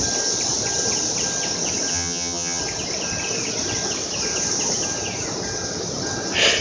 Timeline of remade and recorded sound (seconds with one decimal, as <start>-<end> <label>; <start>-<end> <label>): 0.0-1.9 recorded; 1.9-2.6 remade; 2.6-6.6 recorded